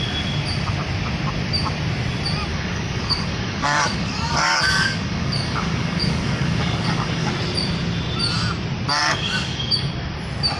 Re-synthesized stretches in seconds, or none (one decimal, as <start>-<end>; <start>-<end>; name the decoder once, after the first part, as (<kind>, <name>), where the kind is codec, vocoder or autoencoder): 2.5-7.3 (codec, DAC); 9.0-9.9